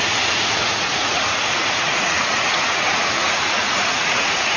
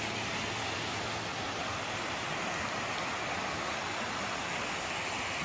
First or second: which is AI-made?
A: first